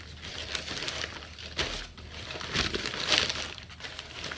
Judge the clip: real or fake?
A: real